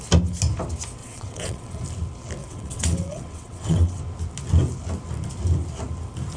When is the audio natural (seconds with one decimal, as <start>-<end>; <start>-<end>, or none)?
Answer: 0.0-1.0; 1.8-2.4; 4.0-6.4